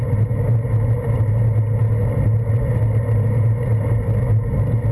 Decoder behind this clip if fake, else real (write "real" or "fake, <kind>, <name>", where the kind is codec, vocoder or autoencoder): real